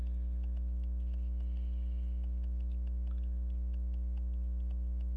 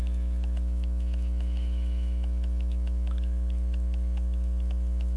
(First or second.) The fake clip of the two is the second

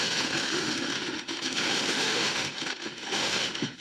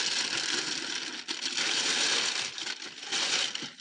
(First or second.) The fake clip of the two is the first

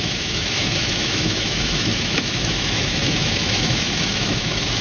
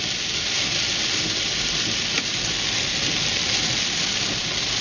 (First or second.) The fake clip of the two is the first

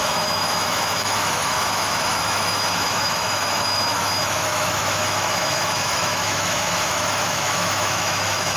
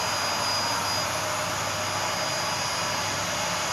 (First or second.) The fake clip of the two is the first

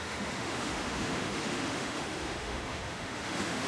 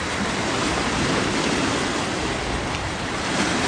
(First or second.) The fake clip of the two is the first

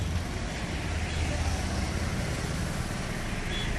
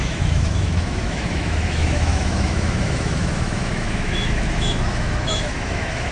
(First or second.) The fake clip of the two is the second